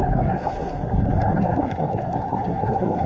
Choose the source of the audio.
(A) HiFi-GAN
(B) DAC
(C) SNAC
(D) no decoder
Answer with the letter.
C